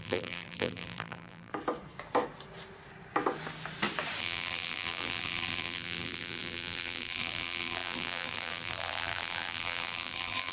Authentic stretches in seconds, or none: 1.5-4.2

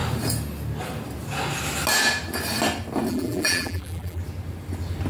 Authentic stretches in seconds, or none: 0.0-3.1; 4.2-5.1

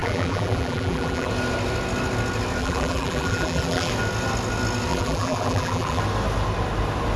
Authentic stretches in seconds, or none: 1.3-2.6; 3.9-4.9; 6.0-7.2

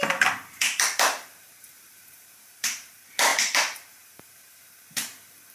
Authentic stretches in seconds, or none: 0.0-0.6; 2.9-3.3; 4.7-5.5

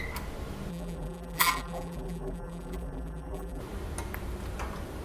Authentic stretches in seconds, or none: 0.0-0.7; 3.6-5.0